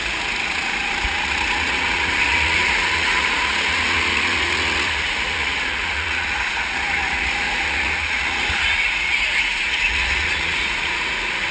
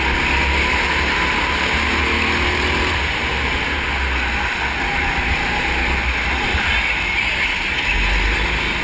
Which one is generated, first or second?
first